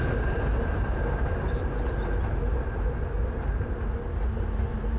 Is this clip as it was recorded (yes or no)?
yes